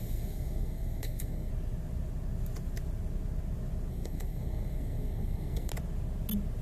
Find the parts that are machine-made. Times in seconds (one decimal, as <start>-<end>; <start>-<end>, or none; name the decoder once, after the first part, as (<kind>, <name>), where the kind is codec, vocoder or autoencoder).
0.0-1.5 (codec, SNAC); 3.9-5.7